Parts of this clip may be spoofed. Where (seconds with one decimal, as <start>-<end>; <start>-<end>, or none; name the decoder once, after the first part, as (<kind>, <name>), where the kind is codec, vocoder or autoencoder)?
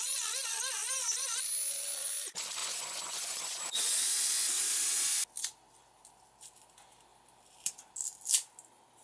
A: 2.6-4.5 (vocoder, Vocos)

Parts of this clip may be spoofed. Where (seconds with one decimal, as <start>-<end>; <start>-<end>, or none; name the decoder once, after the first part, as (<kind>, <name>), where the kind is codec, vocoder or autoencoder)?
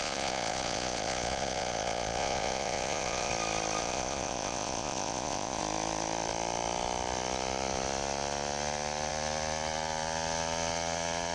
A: 0.0-3.3 (vocoder, Vocos); 3.8-5.6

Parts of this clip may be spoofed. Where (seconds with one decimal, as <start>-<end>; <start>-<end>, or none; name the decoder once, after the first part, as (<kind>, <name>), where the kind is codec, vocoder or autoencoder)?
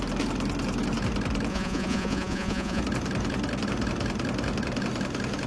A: 1.5-2.8 (vocoder, Vocos)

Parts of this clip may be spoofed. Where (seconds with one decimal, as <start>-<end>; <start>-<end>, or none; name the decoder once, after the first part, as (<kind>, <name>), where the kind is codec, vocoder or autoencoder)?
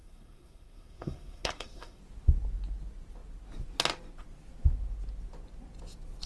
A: 0.0-2.0 (codec, SNAC)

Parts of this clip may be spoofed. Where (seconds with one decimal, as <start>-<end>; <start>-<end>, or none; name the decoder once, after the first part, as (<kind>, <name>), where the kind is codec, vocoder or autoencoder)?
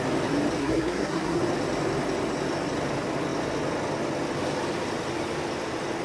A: 0.6-1.4 (codec, SNAC)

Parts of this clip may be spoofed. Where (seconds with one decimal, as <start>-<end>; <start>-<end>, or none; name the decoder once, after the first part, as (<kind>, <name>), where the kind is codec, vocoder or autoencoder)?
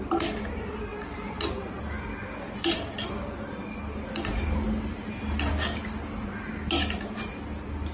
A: none